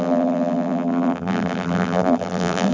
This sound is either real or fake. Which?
fake